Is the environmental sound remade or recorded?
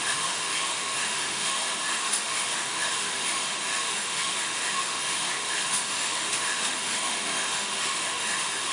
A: remade